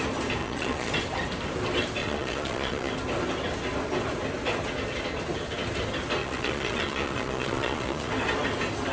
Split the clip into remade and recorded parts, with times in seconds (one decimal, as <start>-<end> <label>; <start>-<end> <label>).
0.0-0.4 recorded; 0.4-0.9 remade; 0.9-2.0 recorded; 2.0-2.9 remade; 2.9-6.2 recorded; 6.2-8.1 remade; 8.1-8.9 recorded